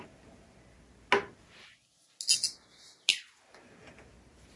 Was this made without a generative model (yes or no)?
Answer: yes